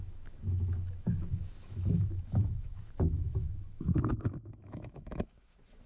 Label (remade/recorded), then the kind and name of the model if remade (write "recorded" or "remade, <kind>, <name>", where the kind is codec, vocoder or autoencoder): remade, autoencoder, DAC-VAE